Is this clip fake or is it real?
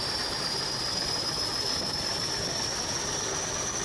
real